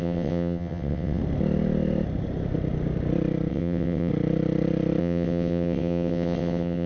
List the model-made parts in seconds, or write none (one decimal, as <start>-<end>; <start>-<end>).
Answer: 0.0-1.2; 3.5-4.1; 5.0-6.9